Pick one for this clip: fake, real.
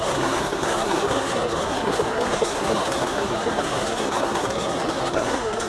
fake